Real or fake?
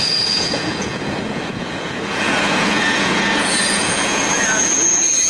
fake